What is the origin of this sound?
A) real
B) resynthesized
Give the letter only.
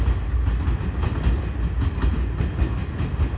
A